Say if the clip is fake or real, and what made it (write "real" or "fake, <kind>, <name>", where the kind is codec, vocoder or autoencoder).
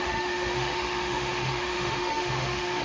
fake, autoencoder, DAC-VAE